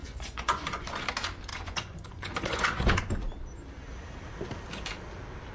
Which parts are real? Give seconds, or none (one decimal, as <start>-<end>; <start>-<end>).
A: 0.9-1.5; 3.0-5.5